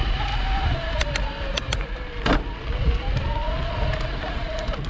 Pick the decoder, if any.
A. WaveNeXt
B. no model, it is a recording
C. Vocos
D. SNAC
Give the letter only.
B